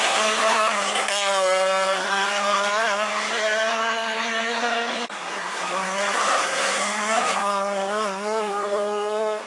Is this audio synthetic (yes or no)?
yes